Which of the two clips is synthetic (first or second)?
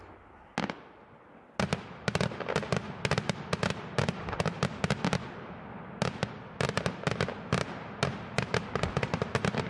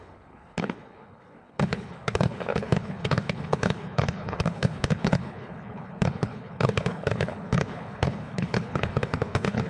second